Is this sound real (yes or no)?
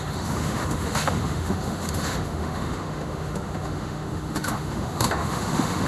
no